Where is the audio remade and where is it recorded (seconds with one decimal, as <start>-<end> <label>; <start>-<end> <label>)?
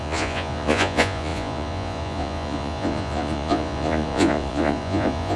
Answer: 0.0-5.4 remade